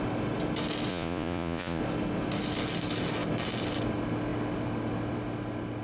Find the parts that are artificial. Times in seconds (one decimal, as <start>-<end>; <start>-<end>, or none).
0.9-1.8